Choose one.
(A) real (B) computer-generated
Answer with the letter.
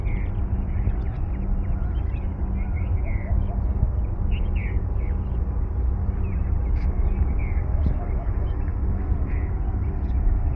A